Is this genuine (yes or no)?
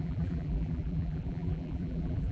no